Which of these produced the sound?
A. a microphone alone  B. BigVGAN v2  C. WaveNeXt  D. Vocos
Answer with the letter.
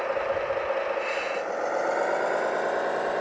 A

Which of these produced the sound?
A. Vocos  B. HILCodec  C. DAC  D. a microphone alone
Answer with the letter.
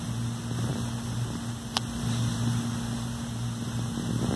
D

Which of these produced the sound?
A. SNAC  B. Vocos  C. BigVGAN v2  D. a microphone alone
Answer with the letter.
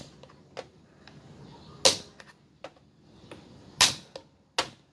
D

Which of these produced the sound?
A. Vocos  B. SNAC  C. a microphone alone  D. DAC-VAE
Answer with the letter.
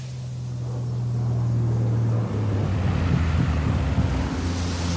C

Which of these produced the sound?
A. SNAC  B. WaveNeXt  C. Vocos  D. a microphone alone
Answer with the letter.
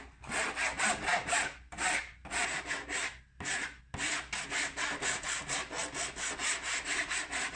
D